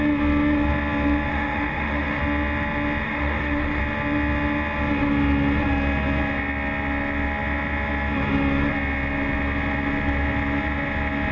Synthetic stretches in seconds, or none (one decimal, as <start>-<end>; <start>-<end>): 1.3-2.2; 3.0-3.8